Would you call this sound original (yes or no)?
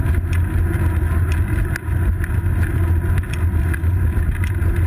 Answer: yes